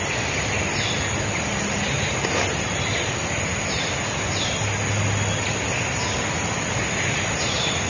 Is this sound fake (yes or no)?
no